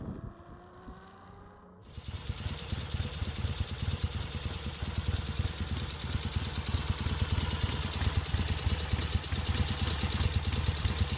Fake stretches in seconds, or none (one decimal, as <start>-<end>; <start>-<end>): 1.8-4.2